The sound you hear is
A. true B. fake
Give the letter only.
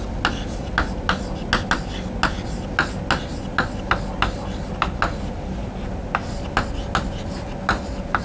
A